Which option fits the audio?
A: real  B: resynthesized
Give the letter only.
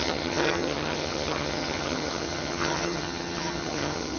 B